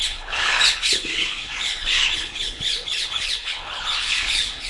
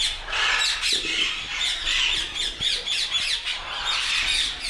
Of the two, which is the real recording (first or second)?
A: second